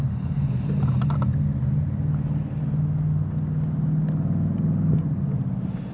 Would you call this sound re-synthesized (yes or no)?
no